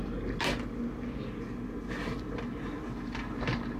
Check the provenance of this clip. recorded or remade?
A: recorded